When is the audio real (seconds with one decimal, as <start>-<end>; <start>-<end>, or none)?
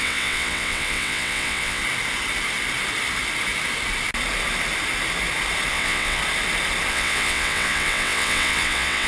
1.8-5.7; 6.2-6.9